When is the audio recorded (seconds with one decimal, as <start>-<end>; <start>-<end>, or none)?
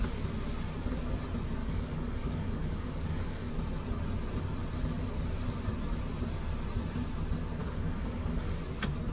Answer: 0.0-1.6; 3.5-7.6; 8.6-9.1